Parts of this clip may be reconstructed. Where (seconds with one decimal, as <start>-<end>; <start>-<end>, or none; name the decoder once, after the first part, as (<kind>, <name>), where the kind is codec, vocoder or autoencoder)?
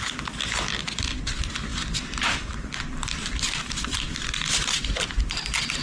1.7-5.2 (vocoder, BigVGAN v2)